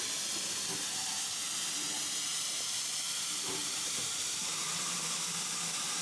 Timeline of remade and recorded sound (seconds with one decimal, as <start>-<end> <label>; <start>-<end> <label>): 0.0-2.3 recorded; 2.3-3.0 remade; 3.0-3.6 recorded; 3.6-5.0 remade; 5.0-6.0 recorded